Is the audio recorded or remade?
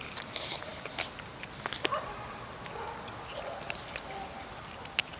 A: recorded